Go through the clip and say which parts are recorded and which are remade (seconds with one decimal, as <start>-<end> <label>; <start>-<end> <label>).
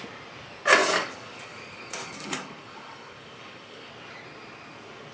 0.0-0.8 recorded; 0.8-3.9 remade; 3.9-5.1 recorded